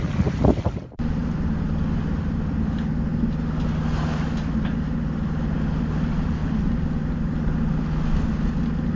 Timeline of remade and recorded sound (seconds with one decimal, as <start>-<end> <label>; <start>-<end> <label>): 0.0-9.0 recorded